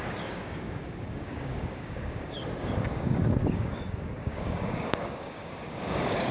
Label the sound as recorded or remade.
remade